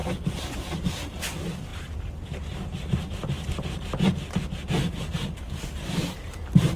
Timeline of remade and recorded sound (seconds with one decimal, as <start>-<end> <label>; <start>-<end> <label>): 0.0-1.2 recorded; 1.2-6.8 remade